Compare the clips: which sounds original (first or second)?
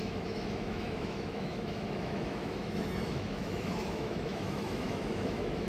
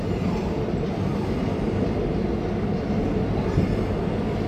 second